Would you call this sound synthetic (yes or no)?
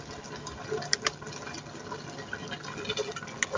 no